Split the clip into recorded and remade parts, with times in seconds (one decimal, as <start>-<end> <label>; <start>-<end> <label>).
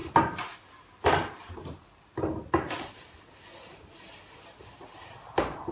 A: 0.0-5.7 recorded